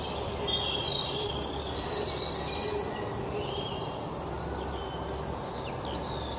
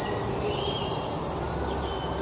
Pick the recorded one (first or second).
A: second